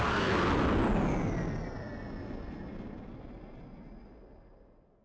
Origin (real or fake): real